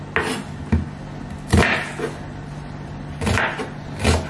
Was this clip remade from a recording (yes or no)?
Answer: no